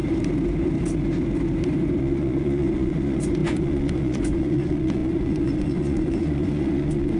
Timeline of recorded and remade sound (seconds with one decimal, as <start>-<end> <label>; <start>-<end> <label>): 0.0-2.0 recorded; 2.0-7.2 remade